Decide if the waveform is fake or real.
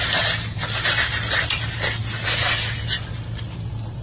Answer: real